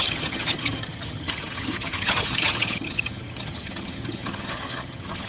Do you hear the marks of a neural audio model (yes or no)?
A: yes